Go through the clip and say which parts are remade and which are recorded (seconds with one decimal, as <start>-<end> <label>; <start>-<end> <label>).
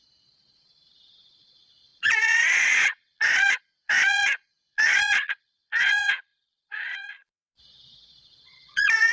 0.0-9.1 remade